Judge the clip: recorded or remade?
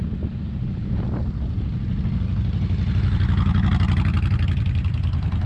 recorded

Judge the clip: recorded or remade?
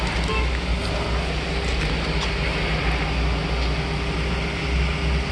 recorded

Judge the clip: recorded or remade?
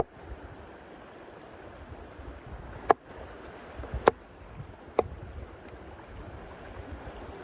recorded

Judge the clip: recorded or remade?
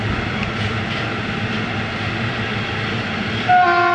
recorded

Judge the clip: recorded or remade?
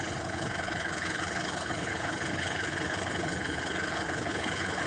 remade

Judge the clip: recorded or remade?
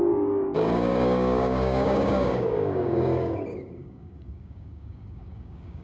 remade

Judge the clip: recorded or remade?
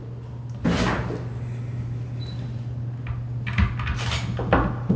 recorded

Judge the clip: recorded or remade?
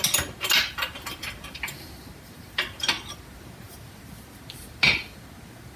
recorded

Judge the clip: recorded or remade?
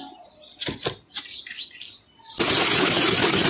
recorded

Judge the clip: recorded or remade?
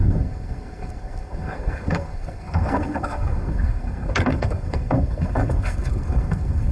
remade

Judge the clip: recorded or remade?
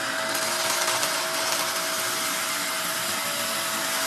recorded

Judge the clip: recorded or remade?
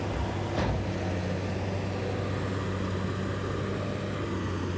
recorded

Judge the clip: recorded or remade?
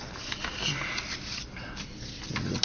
recorded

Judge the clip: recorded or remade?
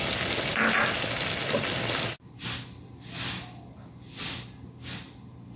recorded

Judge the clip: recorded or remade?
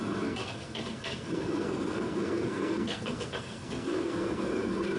remade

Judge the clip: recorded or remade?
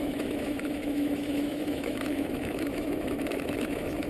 remade